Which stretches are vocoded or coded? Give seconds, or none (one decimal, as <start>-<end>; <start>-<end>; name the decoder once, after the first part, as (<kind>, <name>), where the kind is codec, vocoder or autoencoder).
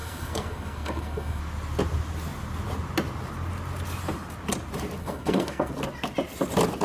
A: 0.0-1.4 (codec, SNAC); 5.0-5.7